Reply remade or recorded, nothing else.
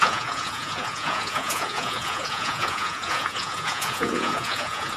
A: remade